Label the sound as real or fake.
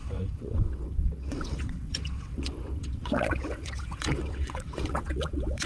fake